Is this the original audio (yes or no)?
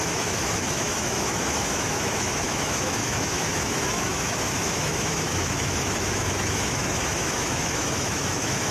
no